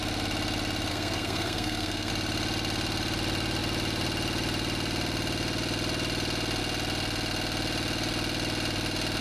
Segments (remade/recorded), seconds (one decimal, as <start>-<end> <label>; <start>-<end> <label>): 0.0-0.9 recorded; 0.9-2.1 remade; 2.1-9.2 recorded